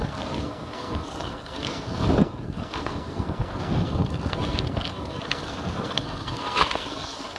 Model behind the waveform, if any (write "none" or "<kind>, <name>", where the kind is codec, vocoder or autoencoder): codec, SNAC